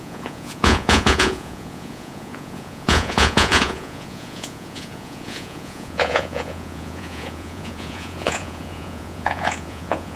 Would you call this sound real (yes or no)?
no